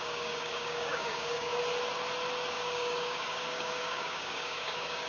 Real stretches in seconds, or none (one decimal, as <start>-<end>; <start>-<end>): 1.6-2.5